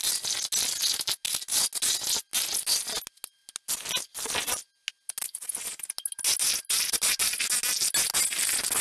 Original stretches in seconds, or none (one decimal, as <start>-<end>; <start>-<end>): 0.0-8.8